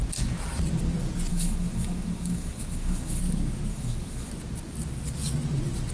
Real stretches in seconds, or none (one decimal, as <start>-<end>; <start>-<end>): 0.0-1.3; 3.2-3.7; 4.3-5.9